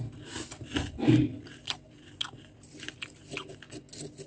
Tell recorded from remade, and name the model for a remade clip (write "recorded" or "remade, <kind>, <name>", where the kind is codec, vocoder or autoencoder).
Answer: recorded